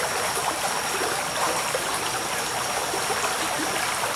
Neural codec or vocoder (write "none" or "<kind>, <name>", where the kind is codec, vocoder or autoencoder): none